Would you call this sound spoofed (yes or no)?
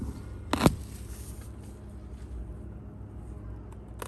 no